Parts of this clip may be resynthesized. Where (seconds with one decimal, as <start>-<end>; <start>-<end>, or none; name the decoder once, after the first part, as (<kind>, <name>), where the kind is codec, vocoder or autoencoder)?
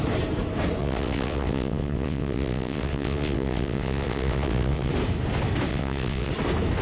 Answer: 0.8-4.9 (vocoder, WaveNeXt); 5.7-6.3